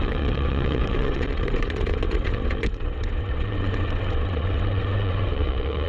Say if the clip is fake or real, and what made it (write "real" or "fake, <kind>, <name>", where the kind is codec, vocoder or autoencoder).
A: fake, vocoder, WaveNeXt